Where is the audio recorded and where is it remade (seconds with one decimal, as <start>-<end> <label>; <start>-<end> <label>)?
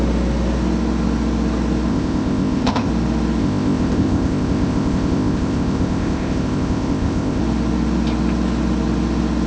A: 0.0-1.9 recorded; 1.9-2.9 remade; 2.9-3.4 recorded; 3.4-7.4 remade; 7.4-9.5 recorded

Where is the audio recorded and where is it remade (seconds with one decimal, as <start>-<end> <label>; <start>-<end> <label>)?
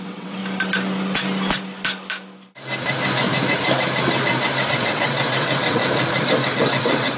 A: 0.0-0.4 remade; 0.4-4.7 recorded; 4.7-5.8 remade; 5.8-6.5 recorded; 6.5-7.2 remade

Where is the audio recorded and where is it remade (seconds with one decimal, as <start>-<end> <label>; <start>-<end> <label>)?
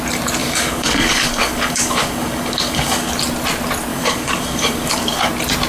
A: 0.0-0.4 recorded; 0.4-3.1 remade; 3.1-3.9 recorded; 3.9-5.3 remade; 5.3-5.7 recorded